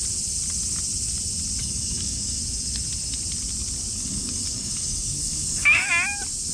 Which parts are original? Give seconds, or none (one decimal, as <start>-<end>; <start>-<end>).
0.0-1.6; 2.4-3.9; 5.9-6.5